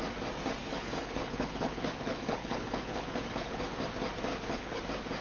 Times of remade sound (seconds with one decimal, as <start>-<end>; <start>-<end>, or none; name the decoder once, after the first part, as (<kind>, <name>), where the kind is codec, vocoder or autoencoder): 0.6-3.7 (codec, HILCodec); 4.3-4.8